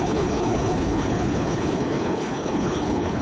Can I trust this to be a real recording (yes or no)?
no